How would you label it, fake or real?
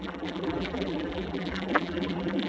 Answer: fake